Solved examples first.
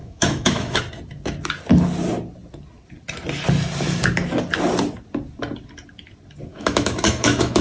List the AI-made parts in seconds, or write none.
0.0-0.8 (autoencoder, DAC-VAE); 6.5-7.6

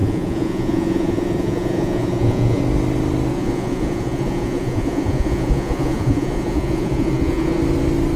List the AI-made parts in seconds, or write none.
0.0-2.6 (vocoder, Vocos); 3.3-7.6

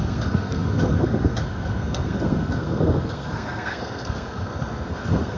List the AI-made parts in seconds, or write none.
0.0-5.4 (codec, SNAC)